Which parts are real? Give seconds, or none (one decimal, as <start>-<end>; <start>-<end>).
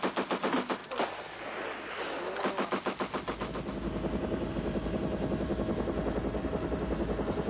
0.0-7.5